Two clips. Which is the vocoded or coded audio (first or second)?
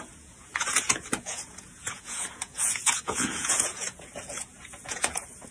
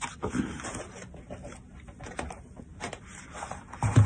first